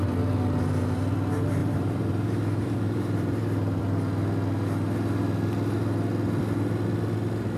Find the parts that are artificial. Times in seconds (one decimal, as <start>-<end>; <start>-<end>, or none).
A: 1.6-3.8